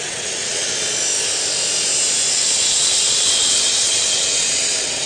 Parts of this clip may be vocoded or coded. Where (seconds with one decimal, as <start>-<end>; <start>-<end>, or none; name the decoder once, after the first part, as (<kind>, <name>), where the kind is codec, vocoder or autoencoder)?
0.0-0.7 (vocoder, WaveNeXt); 2.3-5.1